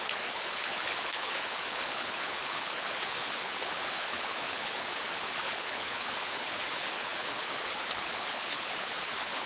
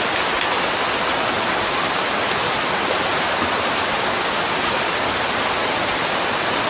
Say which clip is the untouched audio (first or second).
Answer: second